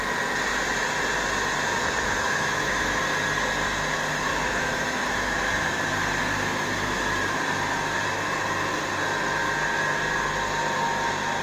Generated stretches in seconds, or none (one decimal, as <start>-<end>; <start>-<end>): 1.8-3.0; 4.3-5.8